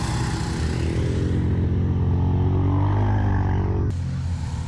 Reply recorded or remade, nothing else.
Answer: recorded